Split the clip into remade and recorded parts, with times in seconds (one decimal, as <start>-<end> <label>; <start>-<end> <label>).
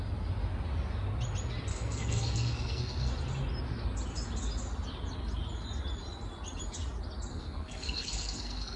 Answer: 0.0-1.7 recorded; 1.7-3.1 remade; 3.1-7.3 recorded; 7.3-8.8 remade